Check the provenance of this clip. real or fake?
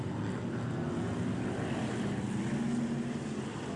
real